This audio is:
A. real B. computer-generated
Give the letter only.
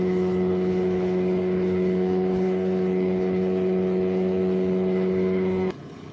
B